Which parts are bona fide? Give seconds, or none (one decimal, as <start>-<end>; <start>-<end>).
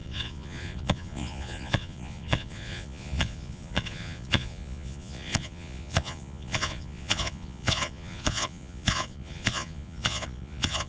none